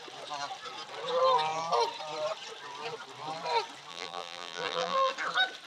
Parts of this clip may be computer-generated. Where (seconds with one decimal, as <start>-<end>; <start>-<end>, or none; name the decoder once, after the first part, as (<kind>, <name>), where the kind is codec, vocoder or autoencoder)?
3.9-5.1 (vocoder, BigVGAN v2)